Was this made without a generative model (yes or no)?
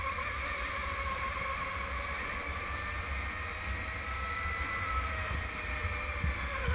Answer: yes